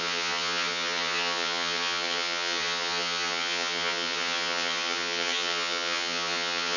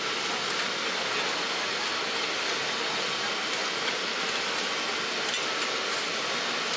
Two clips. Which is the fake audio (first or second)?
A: first